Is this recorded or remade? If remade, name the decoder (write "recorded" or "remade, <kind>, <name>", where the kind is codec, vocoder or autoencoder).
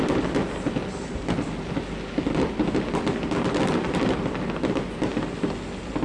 recorded